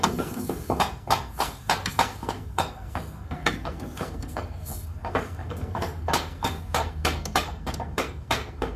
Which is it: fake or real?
fake